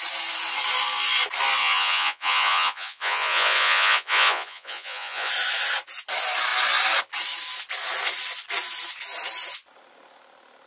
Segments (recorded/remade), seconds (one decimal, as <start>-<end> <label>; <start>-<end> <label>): 0.0-1.6 recorded; 1.6-5.3 remade; 5.3-10.7 recorded